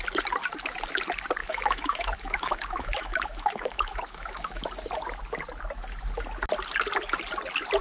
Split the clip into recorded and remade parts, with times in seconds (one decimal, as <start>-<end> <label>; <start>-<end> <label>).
0.0-1.4 recorded; 1.4-4.7 remade; 4.7-7.8 recorded